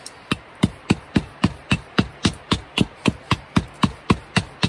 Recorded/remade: remade